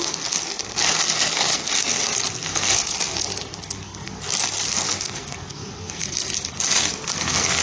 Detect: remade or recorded remade